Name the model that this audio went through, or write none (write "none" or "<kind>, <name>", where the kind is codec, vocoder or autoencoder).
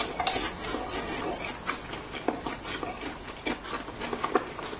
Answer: none